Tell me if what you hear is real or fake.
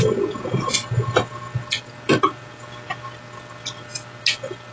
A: real